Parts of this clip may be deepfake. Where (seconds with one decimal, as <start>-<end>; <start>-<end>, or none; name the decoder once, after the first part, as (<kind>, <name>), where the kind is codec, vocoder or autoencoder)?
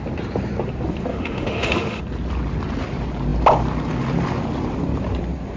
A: 1.1-2.0 (autoencoder, DAC-VAE)